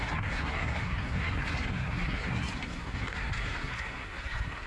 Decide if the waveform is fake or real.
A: fake